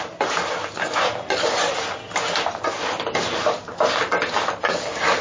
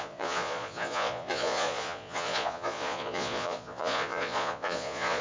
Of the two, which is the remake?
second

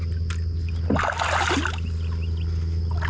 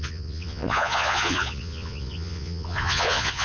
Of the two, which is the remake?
second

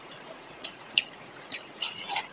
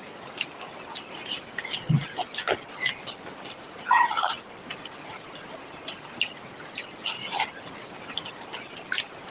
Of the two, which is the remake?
first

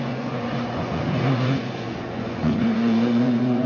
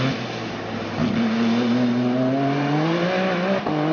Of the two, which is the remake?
first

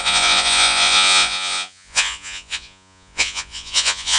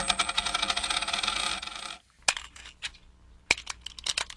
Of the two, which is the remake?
first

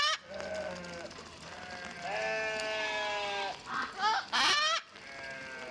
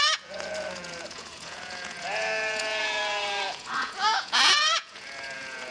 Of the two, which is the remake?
second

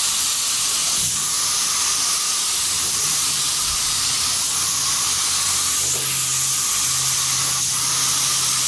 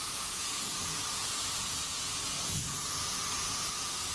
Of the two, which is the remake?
second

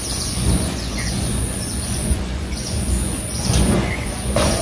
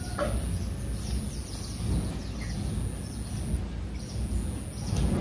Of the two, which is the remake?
first